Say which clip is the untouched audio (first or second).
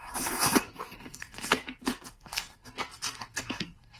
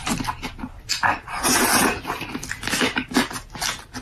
second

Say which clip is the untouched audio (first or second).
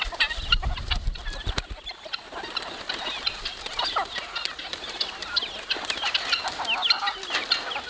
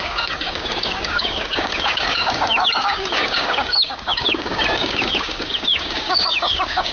first